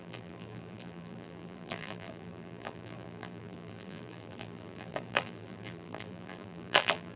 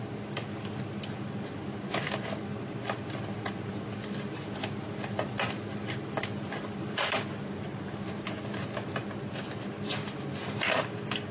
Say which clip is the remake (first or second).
first